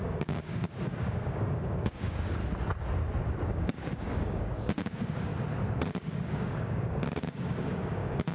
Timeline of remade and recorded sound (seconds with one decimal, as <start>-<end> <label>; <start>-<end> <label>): 0.0-2.4 remade; 2.4-3.5 recorded; 3.5-5.3 remade; 5.3-5.9 recorded; 5.9-8.3 remade